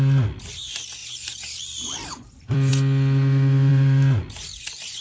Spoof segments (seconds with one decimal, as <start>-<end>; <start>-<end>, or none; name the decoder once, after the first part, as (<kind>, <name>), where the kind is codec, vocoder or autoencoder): 0.0-2.7 (vocoder, BigVGAN v2); 3.7-5.0